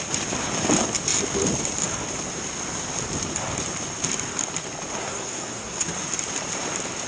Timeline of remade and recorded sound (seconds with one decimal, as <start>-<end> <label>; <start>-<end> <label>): 0.0-5.0 recorded; 5.0-5.9 remade; 5.9-7.1 recorded